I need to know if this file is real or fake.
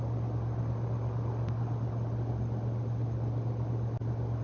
real